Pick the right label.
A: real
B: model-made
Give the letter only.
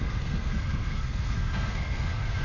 B